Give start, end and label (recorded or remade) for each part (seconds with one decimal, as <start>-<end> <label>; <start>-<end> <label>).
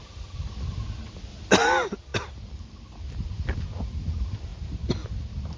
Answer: 0.0-5.6 recorded